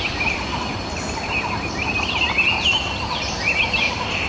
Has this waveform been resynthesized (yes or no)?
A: no